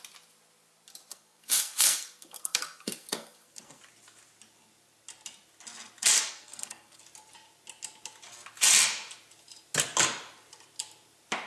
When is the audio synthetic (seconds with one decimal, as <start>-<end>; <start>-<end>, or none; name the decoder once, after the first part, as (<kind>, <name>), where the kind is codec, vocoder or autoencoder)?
1.1-3.8 (codec, SNAC); 6.3-7.0